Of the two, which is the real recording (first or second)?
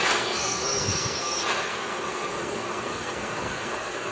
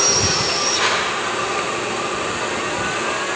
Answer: second